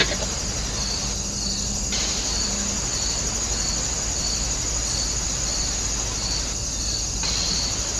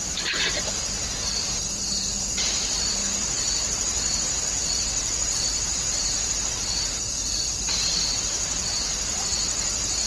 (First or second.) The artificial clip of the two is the second